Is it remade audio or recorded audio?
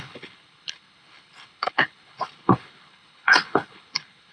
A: remade